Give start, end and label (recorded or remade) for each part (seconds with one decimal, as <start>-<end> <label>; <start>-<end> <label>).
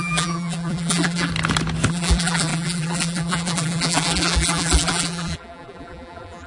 0.0-1.3 remade; 1.3-1.9 recorded; 1.9-6.5 remade